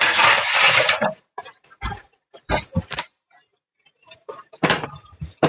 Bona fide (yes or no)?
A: no